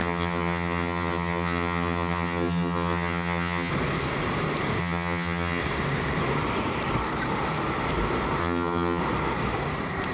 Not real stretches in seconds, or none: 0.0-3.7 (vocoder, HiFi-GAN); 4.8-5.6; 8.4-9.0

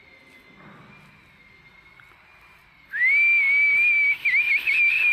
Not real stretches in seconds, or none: none

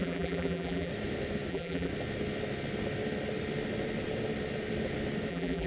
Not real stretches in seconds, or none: 0.0-0.9 (vocoder, BigVGAN v2); 1.5-1.9; 5.3-5.7

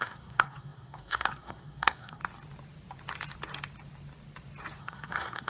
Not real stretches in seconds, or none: 0.0-2.2 (codec, SNAC); 4.8-5.5